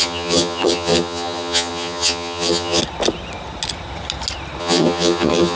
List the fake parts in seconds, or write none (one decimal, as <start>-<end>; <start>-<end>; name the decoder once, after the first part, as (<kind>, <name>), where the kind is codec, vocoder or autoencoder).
0.0-2.8 (vocoder, HiFi-GAN); 4.6-5.6